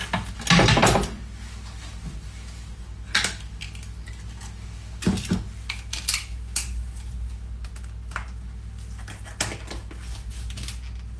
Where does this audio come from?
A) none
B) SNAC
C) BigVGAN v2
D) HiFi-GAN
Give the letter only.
A